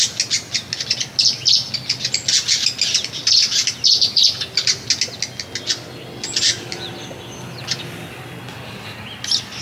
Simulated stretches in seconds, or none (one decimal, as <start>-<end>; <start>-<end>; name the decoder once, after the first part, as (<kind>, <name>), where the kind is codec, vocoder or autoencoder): none